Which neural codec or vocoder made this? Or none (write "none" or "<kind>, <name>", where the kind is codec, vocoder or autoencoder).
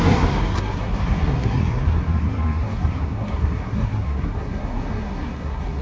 codec, SNAC